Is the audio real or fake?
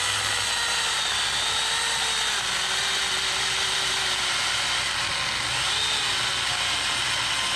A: real